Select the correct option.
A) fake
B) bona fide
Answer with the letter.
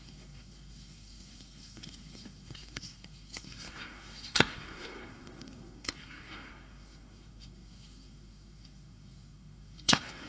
A